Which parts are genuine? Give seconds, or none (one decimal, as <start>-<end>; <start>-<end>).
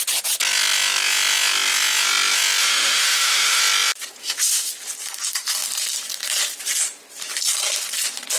0.0-2.6; 3.6-4.2; 4.7-8.4